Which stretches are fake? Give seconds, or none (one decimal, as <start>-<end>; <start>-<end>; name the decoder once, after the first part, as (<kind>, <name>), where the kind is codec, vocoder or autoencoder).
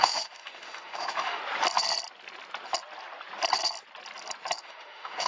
0.0-1.4 (autoencoder, DAC-VAE); 4.6-5.3